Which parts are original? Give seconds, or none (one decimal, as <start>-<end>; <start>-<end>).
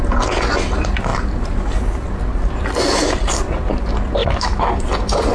0.0-4.2; 4.7-5.3